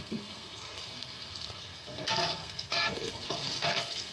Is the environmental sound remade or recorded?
remade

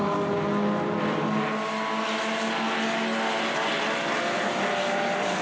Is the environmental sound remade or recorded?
recorded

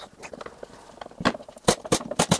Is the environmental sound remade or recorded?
remade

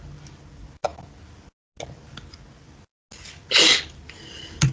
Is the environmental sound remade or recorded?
recorded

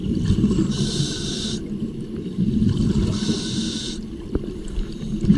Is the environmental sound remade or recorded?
recorded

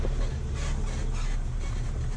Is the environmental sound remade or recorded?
recorded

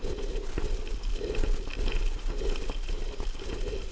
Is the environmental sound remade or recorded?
recorded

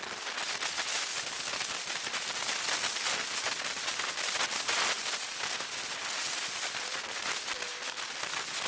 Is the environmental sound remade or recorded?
recorded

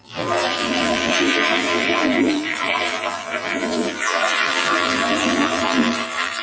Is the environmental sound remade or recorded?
remade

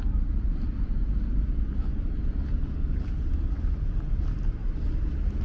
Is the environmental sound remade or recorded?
recorded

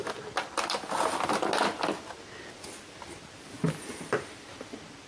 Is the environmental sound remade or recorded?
recorded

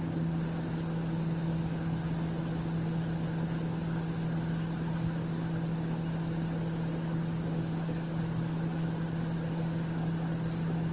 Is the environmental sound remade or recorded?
recorded